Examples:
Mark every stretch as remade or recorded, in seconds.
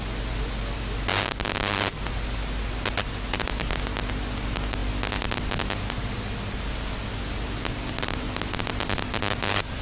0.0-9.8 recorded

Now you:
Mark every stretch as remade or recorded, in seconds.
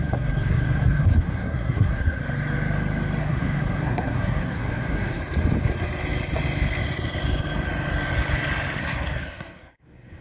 0.0-2.2 remade; 2.2-3.2 recorded; 3.2-5.2 remade; 5.2-8.8 recorded; 8.8-10.2 remade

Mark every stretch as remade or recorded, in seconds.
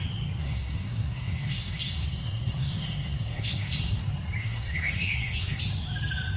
0.0-0.4 recorded; 0.4-4.0 remade; 4.0-4.4 recorded; 4.4-5.6 remade; 5.6-6.4 recorded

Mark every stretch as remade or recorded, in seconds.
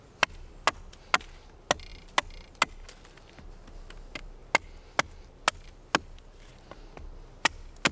0.0-7.9 recorded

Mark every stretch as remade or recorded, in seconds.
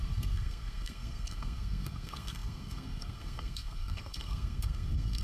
0.0-5.2 remade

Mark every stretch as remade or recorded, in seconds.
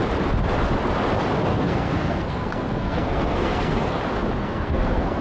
0.0-1.5 recorded; 1.5-4.0 remade; 4.0-4.4 recorded; 4.4-5.2 remade